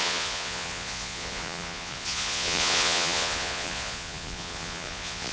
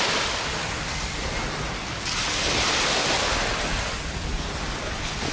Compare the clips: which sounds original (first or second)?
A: second